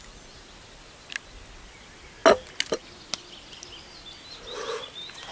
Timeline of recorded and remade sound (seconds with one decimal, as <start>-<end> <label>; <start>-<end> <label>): 0.0-5.3 recorded